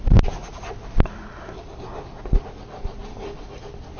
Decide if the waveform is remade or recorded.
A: recorded